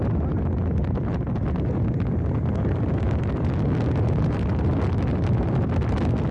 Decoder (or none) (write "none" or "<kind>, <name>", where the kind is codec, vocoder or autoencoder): none